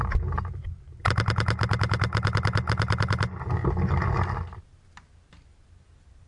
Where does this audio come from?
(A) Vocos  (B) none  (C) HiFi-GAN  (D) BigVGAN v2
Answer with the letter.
B